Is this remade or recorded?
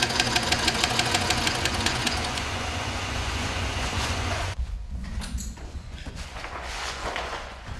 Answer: remade